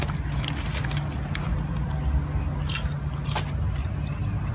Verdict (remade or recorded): recorded